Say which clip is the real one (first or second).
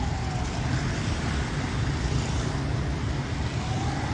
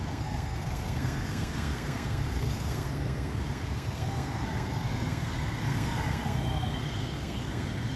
first